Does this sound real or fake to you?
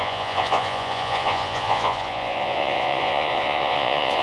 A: fake